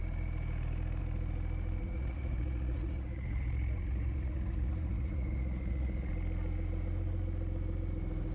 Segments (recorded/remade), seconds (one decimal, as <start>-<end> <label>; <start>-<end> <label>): 0.0-1.8 recorded; 1.8-6.1 remade; 6.1-8.3 recorded